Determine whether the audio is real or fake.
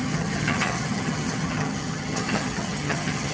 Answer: fake